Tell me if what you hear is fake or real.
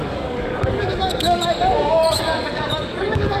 fake